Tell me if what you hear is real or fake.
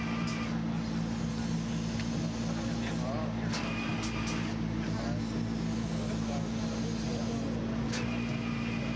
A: real